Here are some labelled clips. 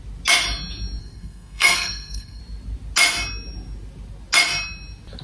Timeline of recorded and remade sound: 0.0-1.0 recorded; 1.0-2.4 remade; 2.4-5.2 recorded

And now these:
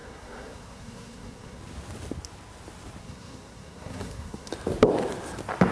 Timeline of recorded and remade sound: 0.0-1.6 remade; 1.6-3.0 recorded; 3.0-4.5 remade; 4.5-5.7 recorded

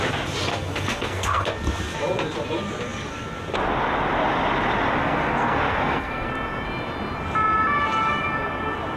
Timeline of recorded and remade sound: 0.0-0.5 recorded; 0.5-1.5 remade; 1.5-5.0 recorded; 5.0-6.3 remade; 6.3-9.0 recorded

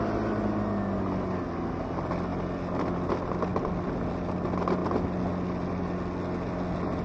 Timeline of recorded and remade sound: 0.0-7.0 recorded

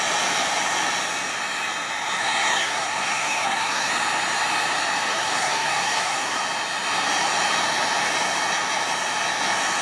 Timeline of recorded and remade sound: 0.0-2.2 recorded; 2.2-3.9 remade; 3.9-5.1 recorded; 5.1-6.4 remade; 6.4-9.8 recorded

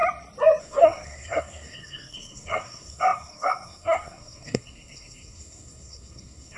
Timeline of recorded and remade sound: 0.0-0.6 recorded; 0.6-6.6 remade